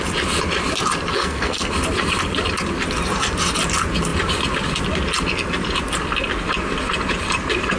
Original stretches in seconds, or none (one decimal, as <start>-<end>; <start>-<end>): 0.0-1.1; 1.7-7.8